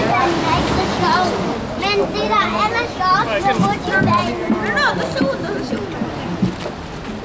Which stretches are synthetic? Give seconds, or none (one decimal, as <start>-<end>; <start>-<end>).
none